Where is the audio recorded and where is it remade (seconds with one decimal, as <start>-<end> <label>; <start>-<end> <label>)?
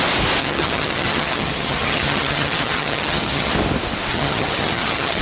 0.0-0.4 recorded; 0.4-3.5 remade; 3.5-4.1 recorded; 4.1-5.2 remade